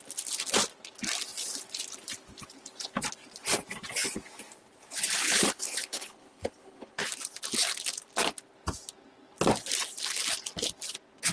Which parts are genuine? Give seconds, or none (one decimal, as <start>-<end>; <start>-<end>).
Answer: 0.0-5.2; 7.0-11.3